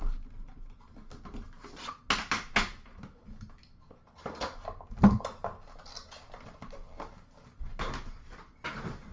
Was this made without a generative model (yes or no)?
yes